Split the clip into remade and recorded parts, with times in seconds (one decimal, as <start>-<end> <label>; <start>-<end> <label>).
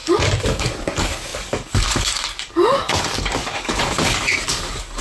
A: 0.0-5.0 remade